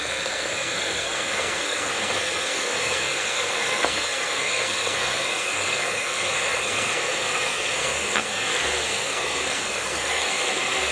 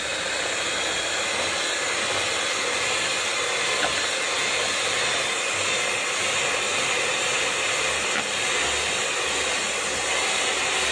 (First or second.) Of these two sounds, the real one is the second